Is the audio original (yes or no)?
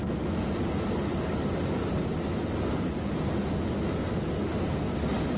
yes